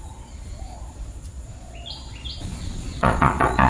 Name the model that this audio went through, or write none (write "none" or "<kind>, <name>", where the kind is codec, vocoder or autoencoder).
vocoder, Vocos